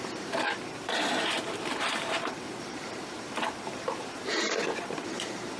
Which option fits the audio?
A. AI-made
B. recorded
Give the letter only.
A